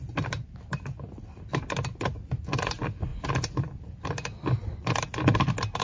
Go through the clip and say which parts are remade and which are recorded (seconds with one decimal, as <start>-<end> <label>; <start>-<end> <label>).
0.0-5.8 recorded